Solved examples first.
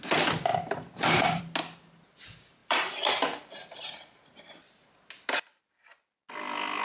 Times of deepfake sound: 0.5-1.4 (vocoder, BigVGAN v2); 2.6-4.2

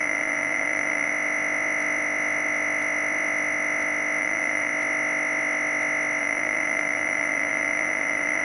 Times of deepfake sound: 0.0-1.1 (vocoder, BigVGAN v2); 4.2-4.7; 6.2-8.4

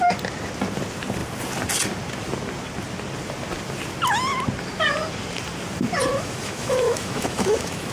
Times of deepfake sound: 6.1-7.9 (autoencoder, DAC-VAE)

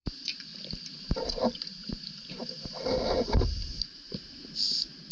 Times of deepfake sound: 0.0-0.5 (vocoder, BigVGAN v2); 1.0-5.1

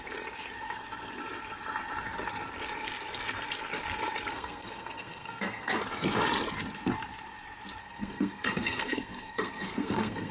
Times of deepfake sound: 4.3-5.8 (codec, SNAC); 7.8-10.3

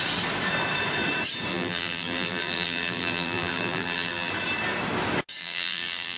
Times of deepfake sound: 1.5-4.3 (vocoder, BigVGAN v2); 5.4-6.2